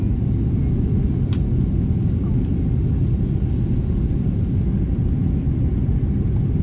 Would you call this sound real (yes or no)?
yes